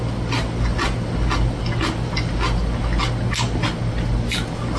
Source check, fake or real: real